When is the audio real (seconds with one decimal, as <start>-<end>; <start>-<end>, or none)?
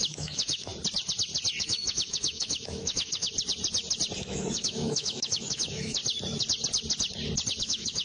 0.7-1.6; 3.3-4.2; 6.0-7.6